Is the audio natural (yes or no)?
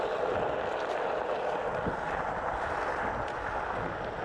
yes